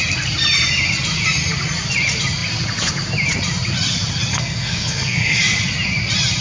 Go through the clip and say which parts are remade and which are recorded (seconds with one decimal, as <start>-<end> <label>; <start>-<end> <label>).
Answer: 0.0-4.3 recorded; 4.3-5.4 remade; 5.4-6.4 recorded